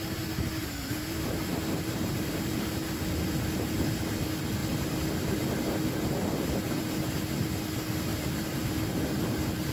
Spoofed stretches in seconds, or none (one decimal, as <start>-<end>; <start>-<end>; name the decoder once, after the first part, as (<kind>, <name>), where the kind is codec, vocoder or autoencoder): 0.6-3.0 (vocoder, BigVGAN v2); 8.1-8.7